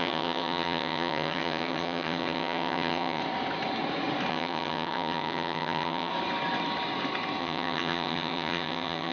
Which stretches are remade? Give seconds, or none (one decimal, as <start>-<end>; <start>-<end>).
0.0-3.2; 4.3-6.1; 7.4-9.1